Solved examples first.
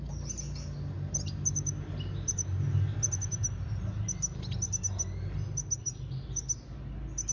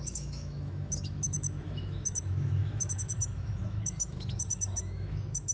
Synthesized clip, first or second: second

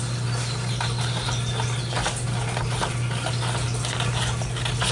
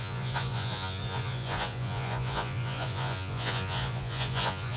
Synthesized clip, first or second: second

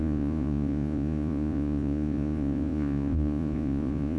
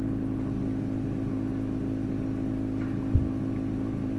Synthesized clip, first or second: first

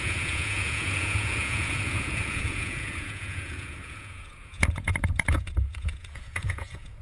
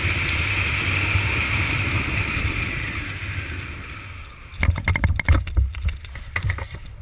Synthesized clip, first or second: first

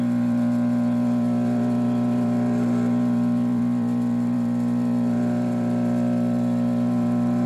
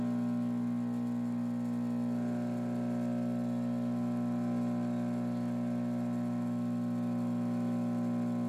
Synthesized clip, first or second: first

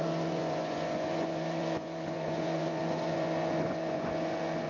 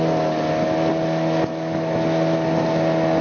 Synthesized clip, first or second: first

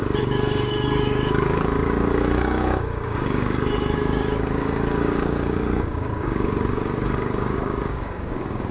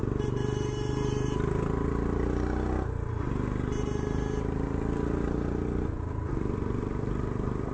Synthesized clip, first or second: first